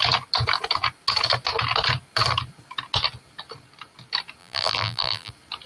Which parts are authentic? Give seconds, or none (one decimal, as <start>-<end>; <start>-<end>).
0.0-4.4; 5.3-5.7